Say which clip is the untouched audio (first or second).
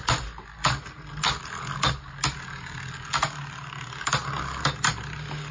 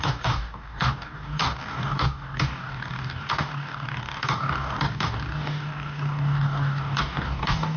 first